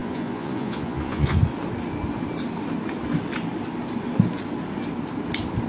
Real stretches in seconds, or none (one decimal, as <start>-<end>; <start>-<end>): 1.4-5.7